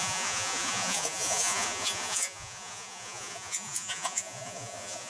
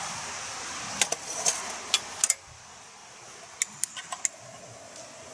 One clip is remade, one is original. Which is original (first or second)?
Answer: second